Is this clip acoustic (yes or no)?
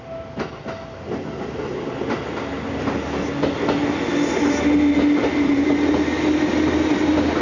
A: yes